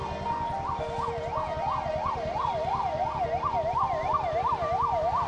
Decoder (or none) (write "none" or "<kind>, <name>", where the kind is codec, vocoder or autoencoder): none